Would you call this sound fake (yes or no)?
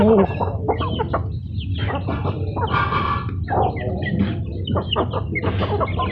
no